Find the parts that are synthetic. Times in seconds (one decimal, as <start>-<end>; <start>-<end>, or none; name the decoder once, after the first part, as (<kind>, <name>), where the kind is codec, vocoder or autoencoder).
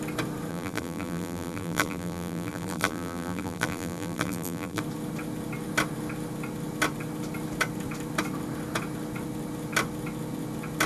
0.5-4.8 (vocoder, BigVGAN v2)